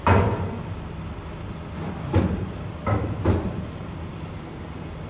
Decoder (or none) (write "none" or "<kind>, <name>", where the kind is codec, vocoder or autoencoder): none